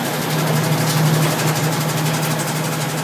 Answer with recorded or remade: recorded